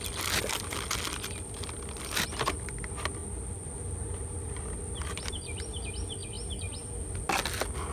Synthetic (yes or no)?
no